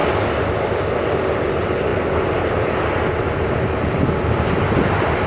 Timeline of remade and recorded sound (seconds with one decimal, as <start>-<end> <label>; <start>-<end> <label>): 0.0-5.3 recorded